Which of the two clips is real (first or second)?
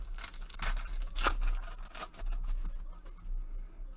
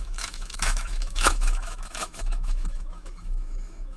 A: first